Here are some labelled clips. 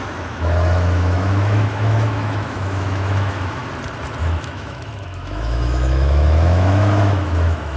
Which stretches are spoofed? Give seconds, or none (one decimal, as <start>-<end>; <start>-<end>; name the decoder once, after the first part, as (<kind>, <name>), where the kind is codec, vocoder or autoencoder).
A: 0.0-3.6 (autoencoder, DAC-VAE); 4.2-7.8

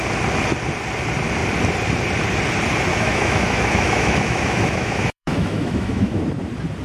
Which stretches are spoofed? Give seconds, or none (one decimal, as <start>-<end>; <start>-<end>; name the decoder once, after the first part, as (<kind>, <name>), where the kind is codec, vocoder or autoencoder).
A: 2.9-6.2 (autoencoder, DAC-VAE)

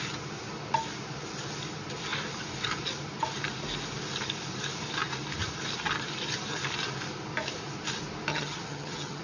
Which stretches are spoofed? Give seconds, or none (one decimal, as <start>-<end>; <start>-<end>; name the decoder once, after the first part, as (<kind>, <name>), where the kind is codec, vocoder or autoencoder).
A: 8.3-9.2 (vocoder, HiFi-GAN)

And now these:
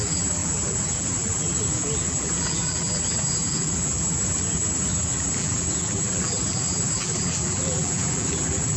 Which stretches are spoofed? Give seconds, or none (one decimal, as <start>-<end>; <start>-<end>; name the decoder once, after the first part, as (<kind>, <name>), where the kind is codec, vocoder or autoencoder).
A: 0.0-8.8 (vocoder, BigVGAN v2)